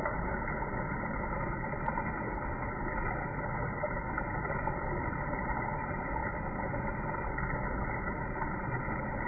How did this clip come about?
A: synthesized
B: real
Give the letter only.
B